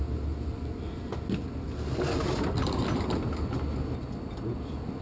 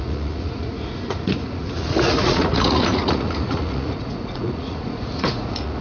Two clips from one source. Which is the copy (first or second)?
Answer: second